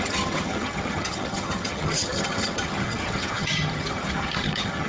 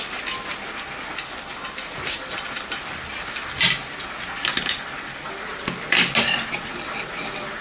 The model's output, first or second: first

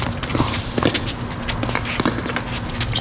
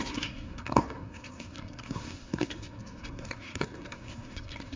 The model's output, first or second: second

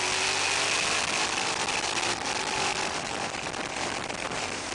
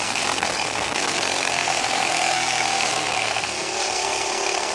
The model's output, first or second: second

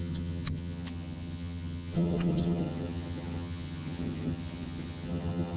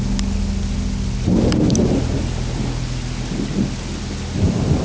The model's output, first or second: first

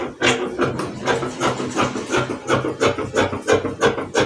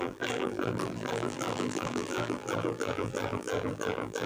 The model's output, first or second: second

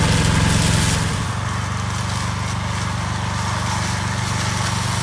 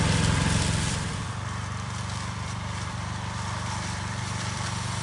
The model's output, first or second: second